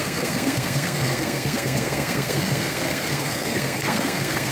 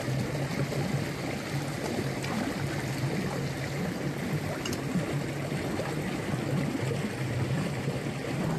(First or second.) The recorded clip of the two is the second